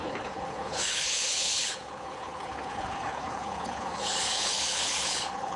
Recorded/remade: remade